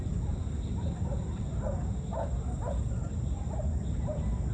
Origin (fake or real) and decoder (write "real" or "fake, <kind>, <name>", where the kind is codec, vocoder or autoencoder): real